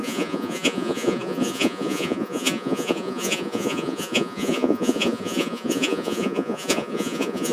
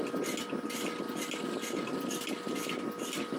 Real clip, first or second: second